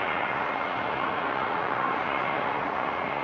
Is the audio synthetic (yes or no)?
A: yes